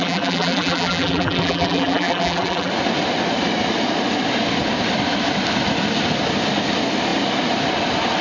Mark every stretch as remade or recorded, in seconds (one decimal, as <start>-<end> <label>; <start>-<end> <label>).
0.0-2.7 remade; 2.7-8.2 recorded